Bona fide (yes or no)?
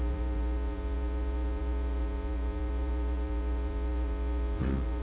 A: no